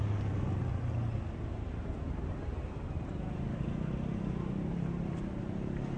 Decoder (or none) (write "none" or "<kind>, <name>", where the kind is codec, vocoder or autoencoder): none